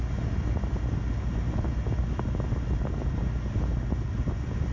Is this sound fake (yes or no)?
no